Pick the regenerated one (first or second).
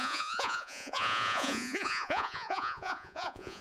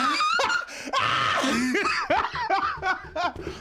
first